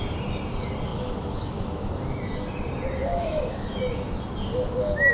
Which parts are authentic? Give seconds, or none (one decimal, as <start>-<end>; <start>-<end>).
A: 0.0-0.9; 2.0-3.1; 3.8-5.1

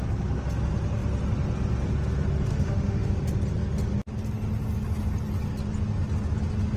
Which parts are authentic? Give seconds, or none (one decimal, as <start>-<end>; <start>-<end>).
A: 0.0-2.5; 3.1-6.8

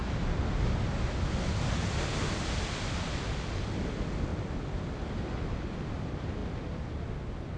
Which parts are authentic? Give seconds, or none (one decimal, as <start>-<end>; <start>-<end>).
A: 0.0-7.6